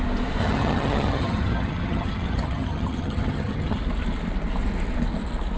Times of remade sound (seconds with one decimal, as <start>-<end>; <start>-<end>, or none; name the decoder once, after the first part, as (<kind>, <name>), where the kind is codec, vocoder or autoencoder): 0.4-3.8 (vocoder, HiFi-GAN)